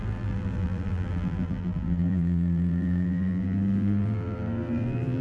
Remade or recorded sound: remade